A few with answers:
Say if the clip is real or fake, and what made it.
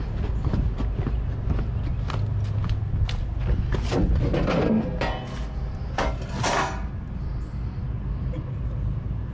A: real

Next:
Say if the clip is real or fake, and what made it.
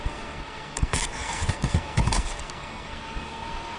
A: fake, codec, SNAC